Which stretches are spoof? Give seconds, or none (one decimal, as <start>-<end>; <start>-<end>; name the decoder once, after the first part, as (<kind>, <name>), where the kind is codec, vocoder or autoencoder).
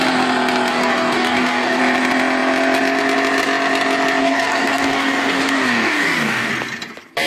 0.7-1.8 (codec, DAC); 4.2-6.5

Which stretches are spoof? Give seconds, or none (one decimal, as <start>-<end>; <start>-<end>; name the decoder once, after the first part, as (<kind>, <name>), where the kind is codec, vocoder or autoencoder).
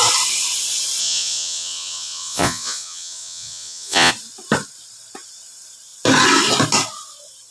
1.0-4.1 (vocoder, Vocos)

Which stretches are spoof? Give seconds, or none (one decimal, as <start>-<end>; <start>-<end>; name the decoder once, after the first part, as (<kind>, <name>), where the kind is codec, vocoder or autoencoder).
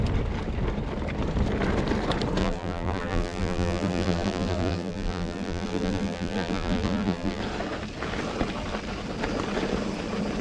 2.4-7.4 (vocoder, BigVGAN v2)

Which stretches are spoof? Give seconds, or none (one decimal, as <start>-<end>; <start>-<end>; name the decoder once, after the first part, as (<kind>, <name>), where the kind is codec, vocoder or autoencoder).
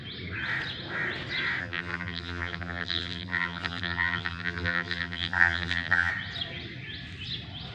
1.6-6.1 (vocoder, BigVGAN v2)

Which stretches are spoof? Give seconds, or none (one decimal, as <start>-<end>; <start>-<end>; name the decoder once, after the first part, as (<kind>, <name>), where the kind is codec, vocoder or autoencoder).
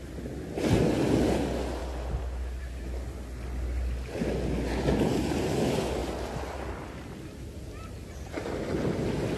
none